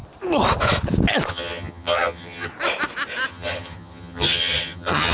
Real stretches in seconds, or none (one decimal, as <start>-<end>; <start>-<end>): 0.0-1.3; 2.5-3.3